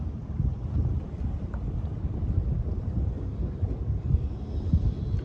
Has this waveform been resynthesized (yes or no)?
no